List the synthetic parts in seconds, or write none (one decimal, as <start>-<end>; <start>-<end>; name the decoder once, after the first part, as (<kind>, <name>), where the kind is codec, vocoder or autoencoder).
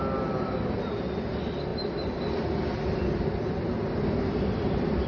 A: none